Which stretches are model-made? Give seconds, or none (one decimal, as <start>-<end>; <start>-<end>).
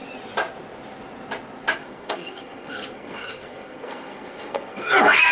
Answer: 1.8-5.3